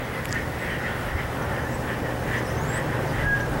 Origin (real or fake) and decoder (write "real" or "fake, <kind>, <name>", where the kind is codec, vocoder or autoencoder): real